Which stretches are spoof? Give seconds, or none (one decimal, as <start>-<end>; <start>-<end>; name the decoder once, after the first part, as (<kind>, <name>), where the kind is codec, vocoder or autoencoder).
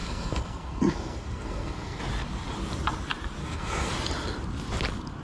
0.0-2.0 (codec, SNAC); 3.4-3.9